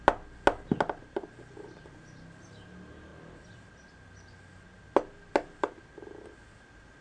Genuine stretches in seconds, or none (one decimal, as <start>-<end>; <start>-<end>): 0.0-3.1; 4.4-7.0